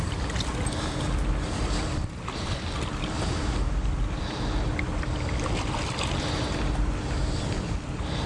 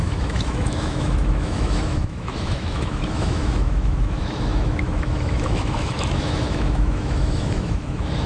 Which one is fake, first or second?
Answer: second